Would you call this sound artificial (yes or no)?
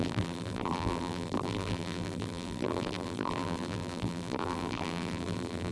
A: yes